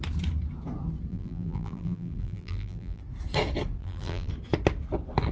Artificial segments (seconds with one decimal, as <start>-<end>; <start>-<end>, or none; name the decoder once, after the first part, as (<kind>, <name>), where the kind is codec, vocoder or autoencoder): 1.1-3.0 (vocoder, BigVGAN v2); 3.8-4.3